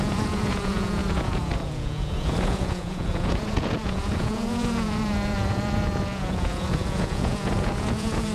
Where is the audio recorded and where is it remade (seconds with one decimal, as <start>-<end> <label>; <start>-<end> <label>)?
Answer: 0.0-8.3 remade

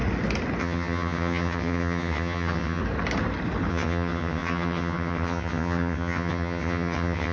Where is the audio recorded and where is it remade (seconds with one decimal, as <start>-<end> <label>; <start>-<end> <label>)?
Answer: 0.0-0.6 recorded; 0.6-2.8 remade; 2.8-3.7 recorded; 3.7-7.3 remade